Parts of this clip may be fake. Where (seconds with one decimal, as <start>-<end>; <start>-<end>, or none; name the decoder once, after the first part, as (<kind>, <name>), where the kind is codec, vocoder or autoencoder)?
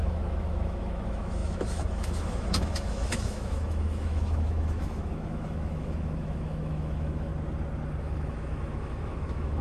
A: 0.0-7.3 (autoencoder, DAC-VAE); 8.0-9.6